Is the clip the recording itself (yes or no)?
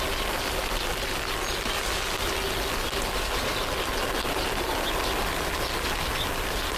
yes